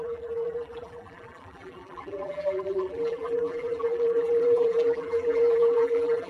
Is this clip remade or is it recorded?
remade